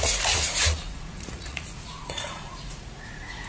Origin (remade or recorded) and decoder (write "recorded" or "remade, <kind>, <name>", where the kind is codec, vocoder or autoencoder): remade, vocoder, Vocos